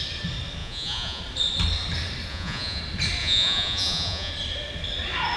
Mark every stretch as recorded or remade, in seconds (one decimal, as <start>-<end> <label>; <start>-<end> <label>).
0.0-0.6 recorded; 0.6-1.2 remade; 1.2-2.3 recorded; 2.3-2.8 remade; 2.8-3.2 recorded; 3.2-4.3 remade; 4.3-5.4 recorded

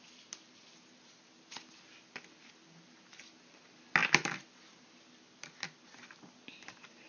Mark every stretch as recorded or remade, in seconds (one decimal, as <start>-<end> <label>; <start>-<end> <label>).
0.0-7.1 recorded